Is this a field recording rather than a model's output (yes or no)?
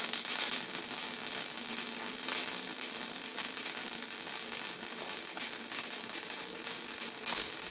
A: no